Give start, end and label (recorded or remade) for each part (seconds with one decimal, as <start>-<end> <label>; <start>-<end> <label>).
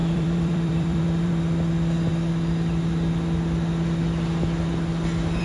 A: 0.0-1.3 remade; 1.3-5.4 recorded